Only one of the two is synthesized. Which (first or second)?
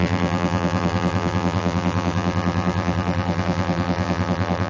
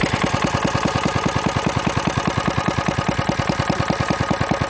first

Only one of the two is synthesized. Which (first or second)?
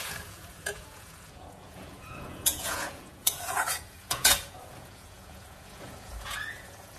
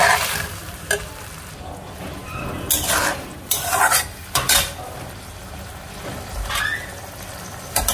first